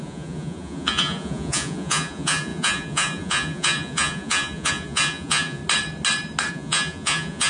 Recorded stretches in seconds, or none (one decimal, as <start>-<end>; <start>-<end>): 5.6-6.5